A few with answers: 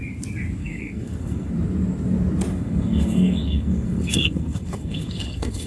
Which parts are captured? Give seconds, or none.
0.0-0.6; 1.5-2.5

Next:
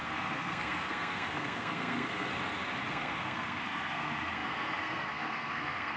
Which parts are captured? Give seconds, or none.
2.3-2.9

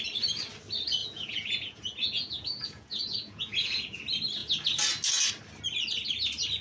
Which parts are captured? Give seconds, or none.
0.0-1.0; 4.0-6.6

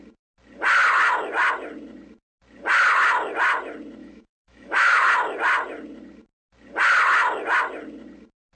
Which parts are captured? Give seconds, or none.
0.0-4.0; 5.1-8.6

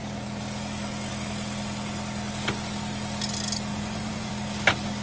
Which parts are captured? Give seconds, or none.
0.0-3.7; 4.3-5.0

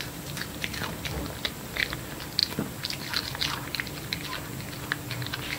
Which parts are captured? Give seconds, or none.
0.0-5.6

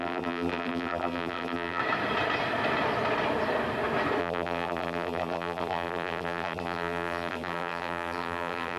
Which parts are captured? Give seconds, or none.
1.8-4.2

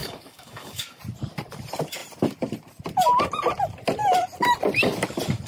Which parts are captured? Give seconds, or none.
1.0-5.5